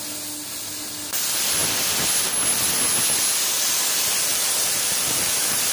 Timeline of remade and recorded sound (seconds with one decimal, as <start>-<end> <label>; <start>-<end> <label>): 0.0-4.3 recorded; 4.3-5.7 remade